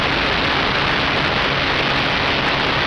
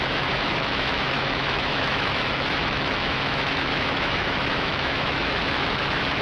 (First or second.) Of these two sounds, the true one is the first